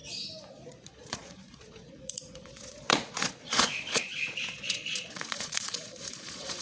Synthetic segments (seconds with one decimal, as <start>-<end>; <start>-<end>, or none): 0.5-6.6